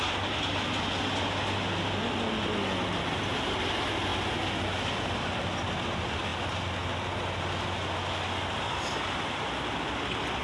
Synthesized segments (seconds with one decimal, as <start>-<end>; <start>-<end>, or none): none